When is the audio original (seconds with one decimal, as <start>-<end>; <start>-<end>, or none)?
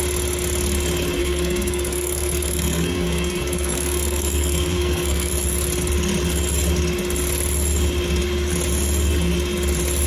0.0-1.2; 5.3-10.1